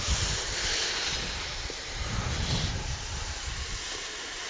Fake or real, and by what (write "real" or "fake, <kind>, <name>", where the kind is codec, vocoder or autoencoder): fake, vocoder, BigVGAN v2